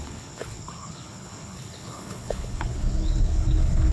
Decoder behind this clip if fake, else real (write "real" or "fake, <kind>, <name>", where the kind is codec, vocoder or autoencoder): fake, codec, HILCodec